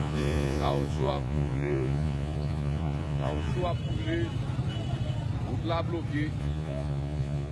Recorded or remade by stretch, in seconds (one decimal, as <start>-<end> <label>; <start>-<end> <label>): 0.0-3.5 remade; 3.5-6.4 recorded; 6.4-7.5 remade